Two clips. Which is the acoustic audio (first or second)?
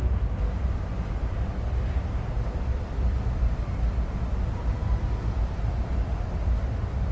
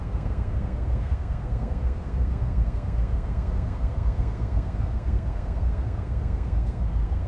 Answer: first